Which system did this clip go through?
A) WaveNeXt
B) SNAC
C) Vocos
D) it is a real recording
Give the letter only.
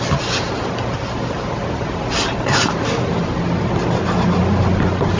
D